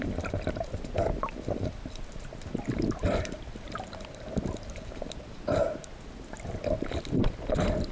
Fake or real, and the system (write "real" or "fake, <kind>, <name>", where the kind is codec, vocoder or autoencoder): real